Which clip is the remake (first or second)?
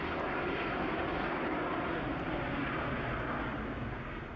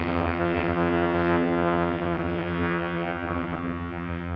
second